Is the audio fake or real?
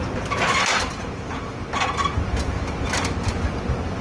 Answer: real